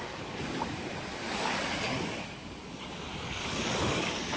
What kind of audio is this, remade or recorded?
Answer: remade